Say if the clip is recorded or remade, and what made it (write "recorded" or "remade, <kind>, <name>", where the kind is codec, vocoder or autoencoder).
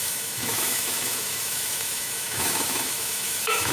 remade, autoencoder, DAC-VAE